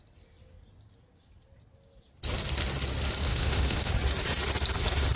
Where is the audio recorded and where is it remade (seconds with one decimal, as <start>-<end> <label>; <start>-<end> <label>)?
0.0-3.3 recorded; 3.3-3.9 remade; 3.9-5.2 recorded